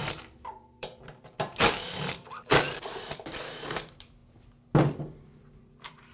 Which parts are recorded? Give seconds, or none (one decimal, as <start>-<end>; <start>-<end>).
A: 4.2-5.0